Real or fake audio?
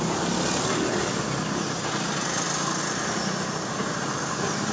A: real